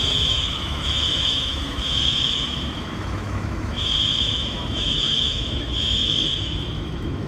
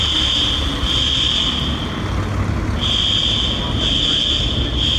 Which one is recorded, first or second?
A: second